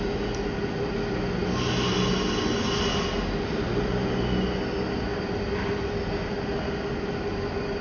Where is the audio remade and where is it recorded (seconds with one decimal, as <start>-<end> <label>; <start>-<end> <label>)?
0.0-7.8 recorded

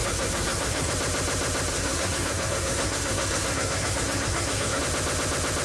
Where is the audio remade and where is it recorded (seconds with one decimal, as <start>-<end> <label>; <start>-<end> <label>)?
0.0-0.9 remade; 0.9-1.7 recorded; 1.7-4.8 remade; 4.8-5.6 recorded